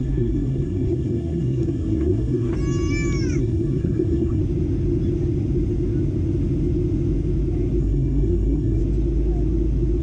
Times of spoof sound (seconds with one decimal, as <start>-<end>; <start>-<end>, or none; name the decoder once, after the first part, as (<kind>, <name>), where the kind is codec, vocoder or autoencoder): 0.0-2.5 (codec, SNAC); 3.4-4.4; 7.8-8.8

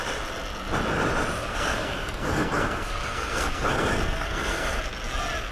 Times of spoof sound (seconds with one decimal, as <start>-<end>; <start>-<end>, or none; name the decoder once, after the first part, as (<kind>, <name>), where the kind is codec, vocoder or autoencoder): 1.5-4.8 (codec, SNAC)

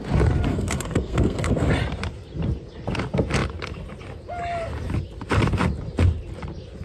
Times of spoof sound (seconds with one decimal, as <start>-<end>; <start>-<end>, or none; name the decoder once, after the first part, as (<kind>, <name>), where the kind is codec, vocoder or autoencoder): 0.5-1.7 (codec, SNAC)

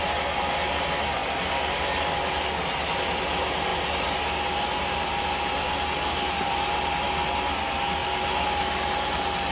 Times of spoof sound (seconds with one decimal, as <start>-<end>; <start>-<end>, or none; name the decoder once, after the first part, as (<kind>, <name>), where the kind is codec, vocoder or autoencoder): none

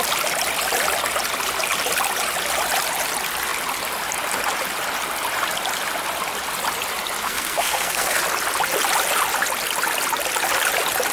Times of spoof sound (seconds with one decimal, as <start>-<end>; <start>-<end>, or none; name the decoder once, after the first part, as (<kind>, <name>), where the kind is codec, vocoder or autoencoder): 7.2-8.2 (codec, SNAC)

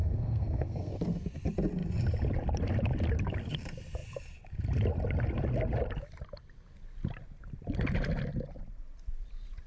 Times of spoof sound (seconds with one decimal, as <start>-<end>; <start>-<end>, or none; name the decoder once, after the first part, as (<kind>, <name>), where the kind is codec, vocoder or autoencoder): 0.0-0.9 (codec, SNAC)

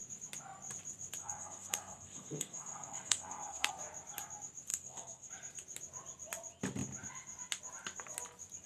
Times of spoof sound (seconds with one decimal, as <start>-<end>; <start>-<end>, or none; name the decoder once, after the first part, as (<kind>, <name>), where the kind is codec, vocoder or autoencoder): 1.2-3.7 (codec, SNAC); 4.7-5.3